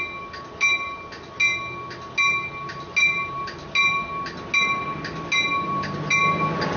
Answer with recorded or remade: recorded